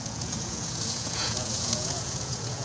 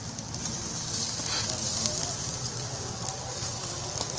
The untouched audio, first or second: second